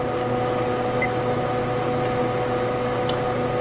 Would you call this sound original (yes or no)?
yes